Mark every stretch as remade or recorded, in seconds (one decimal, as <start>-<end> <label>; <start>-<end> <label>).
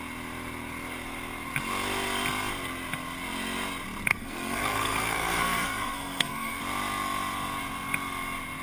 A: 0.0-4.1 recorded; 4.1-6.6 remade; 6.6-8.6 recorded